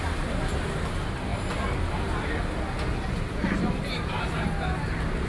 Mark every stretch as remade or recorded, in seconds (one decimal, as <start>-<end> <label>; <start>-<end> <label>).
0.0-5.3 recorded